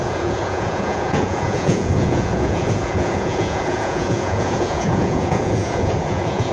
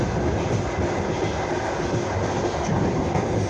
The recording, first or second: second